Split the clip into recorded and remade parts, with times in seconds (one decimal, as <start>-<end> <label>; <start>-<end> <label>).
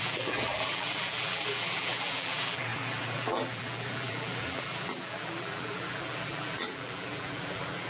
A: 0.0-7.9 remade